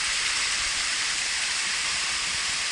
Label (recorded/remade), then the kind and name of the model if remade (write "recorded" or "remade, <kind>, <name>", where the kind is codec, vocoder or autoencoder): recorded